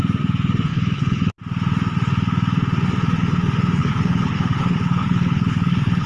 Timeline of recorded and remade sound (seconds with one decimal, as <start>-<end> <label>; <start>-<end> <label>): 0.0-0.7 recorded; 0.7-1.3 remade; 1.3-3.8 recorded; 3.8-6.1 remade